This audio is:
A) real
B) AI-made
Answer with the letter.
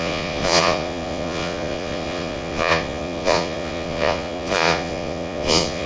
B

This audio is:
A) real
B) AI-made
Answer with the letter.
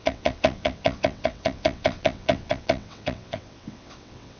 B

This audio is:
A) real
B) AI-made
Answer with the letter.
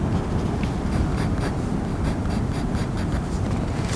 A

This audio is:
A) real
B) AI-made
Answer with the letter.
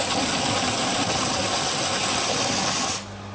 A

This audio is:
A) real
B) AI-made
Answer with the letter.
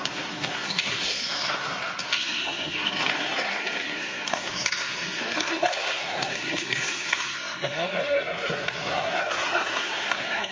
B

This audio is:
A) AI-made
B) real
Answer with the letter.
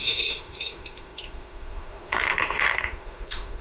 A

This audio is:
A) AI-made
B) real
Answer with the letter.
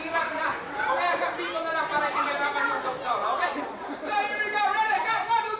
A